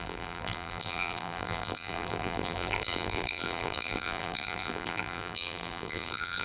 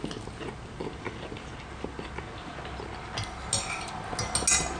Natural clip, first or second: second